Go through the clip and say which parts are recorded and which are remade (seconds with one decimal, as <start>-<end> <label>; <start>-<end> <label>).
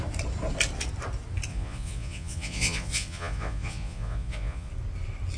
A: 0.0-1.5 recorded; 1.5-4.7 remade; 4.7-5.4 recorded